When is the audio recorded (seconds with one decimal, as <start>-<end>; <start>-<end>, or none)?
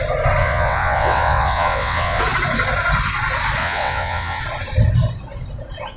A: 0.0-0.4; 2.2-3.6; 4.4-6.0